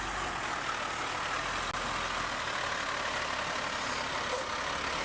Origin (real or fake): real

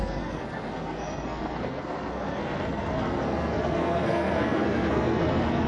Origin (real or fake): fake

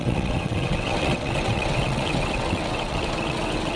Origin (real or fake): fake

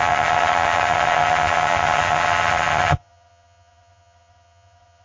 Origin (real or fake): fake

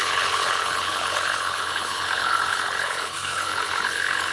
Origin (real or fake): fake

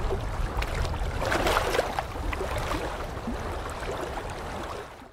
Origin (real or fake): real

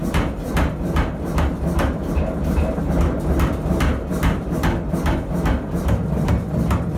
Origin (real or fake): real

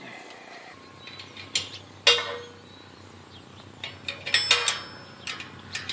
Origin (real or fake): real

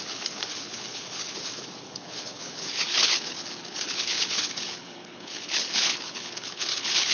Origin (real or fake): fake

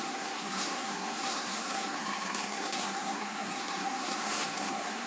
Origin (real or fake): fake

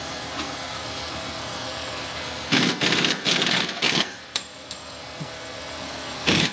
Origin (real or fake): fake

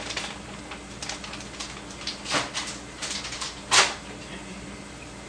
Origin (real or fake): fake